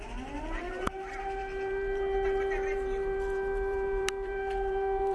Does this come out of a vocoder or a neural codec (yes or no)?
yes